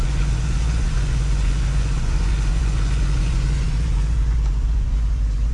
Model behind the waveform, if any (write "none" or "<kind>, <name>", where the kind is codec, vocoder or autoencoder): vocoder, Vocos